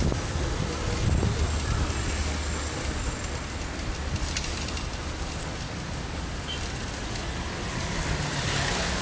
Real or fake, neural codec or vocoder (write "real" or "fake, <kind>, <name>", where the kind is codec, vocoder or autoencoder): real